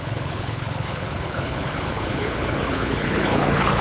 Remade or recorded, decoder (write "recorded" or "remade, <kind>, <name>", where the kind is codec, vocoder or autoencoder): remade, codec, HILCodec